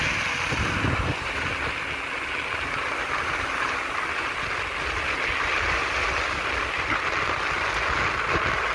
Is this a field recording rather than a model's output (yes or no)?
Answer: yes